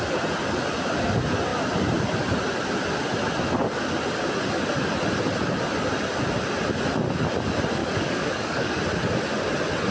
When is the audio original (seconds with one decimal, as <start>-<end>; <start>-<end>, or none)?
0.0-7.8; 8.8-9.9